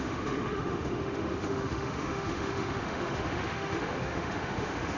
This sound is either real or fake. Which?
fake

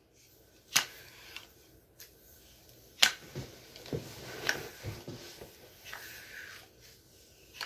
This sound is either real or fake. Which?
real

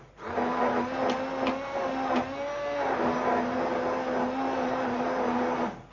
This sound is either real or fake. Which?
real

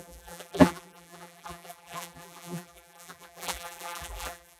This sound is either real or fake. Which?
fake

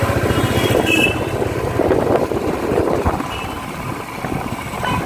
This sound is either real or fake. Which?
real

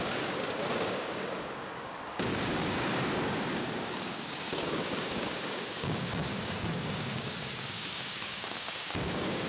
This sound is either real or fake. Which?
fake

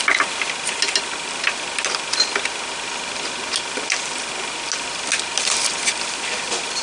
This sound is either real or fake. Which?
real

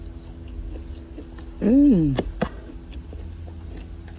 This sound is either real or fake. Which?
real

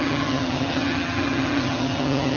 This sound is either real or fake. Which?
fake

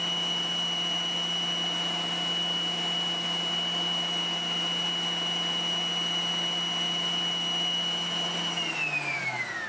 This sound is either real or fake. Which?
real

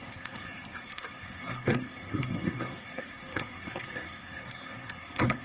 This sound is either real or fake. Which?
fake